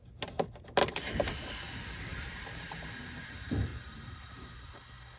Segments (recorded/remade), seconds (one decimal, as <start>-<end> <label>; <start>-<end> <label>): 0.0-2.1 recorded; 2.1-2.9 remade; 2.9-3.7 recorded; 3.7-4.3 remade; 4.3-5.2 recorded